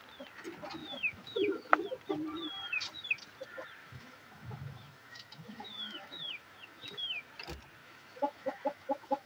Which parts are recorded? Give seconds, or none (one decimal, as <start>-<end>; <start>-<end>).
0.0-0.8; 1.7-3.8; 7.3-7.8